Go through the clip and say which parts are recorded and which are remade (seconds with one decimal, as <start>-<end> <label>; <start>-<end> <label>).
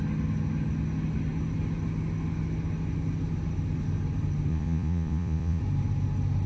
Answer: 0.0-4.5 recorded; 4.5-5.6 remade; 5.6-6.5 recorded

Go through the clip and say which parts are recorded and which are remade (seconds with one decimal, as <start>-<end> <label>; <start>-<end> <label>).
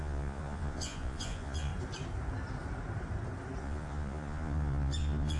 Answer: 0.0-1.7 remade; 1.7-3.6 recorded; 3.6-5.4 remade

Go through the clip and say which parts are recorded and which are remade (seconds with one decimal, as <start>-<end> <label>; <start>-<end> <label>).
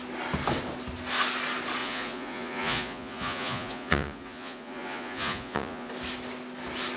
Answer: 0.0-1.8 recorded; 1.8-5.9 remade; 5.9-7.0 recorded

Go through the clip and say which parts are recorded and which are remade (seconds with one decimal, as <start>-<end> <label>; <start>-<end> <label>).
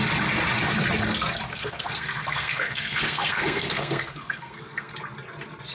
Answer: 0.0-1.5 recorded; 1.5-4.9 remade; 4.9-5.7 recorded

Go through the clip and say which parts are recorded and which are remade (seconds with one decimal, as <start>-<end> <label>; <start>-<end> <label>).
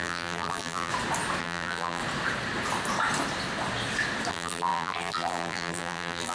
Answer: 0.0-0.9 remade; 0.9-1.4 recorded; 1.4-2.0 remade; 2.0-4.3 recorded; 4.3-6.3 remade